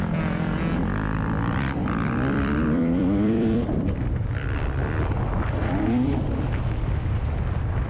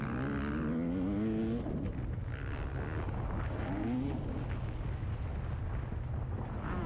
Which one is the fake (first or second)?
first